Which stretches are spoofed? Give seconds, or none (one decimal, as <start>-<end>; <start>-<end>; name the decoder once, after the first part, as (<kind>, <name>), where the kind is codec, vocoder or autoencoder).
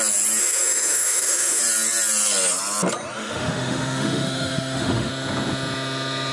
0.4-1.6 (autoencoder, DAC-VAE); 3.2-5.1